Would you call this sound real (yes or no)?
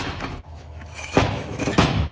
no